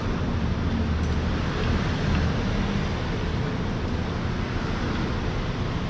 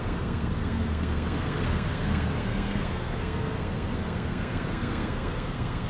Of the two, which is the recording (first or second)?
first